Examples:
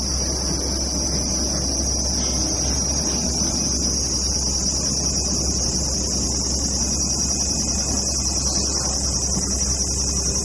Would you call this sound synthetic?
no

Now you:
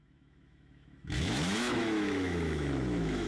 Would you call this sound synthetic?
yes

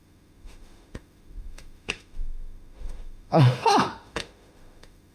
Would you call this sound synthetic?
yes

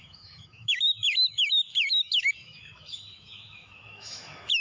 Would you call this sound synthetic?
yes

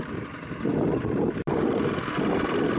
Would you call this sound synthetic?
no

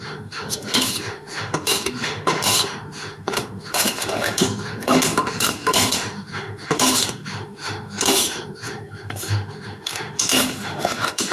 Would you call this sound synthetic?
yes